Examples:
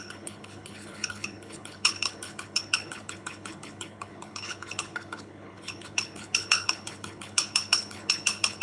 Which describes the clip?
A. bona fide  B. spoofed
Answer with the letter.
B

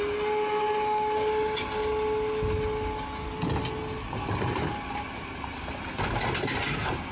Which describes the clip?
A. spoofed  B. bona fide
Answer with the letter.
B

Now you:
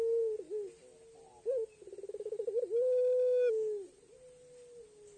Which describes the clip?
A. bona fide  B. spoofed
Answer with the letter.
A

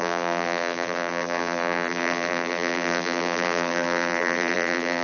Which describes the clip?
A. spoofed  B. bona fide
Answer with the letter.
A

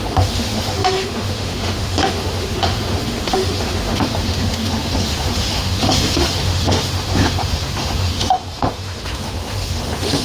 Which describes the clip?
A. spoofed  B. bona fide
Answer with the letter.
A